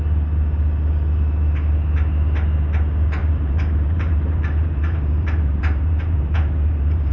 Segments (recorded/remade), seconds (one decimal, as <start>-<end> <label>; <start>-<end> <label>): 0.0-3.2 recorded; 3.2-7.1 remade